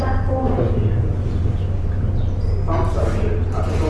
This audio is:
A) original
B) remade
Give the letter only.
A